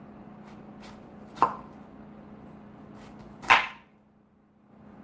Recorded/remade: recorded